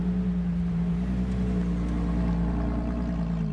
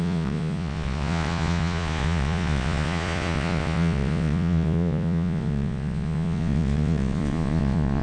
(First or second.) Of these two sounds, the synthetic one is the second